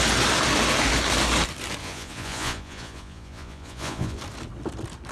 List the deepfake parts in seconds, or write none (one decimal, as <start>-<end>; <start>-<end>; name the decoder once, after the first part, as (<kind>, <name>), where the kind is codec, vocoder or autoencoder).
1.8-4.2 (vocoder, Vocos)